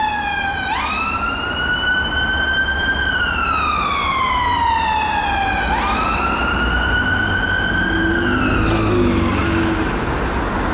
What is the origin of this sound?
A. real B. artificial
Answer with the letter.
A